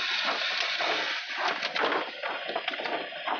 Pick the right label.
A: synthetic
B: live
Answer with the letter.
B